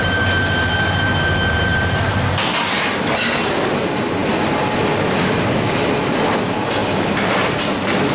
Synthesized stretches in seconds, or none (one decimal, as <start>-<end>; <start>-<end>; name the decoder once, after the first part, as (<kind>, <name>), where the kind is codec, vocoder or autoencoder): none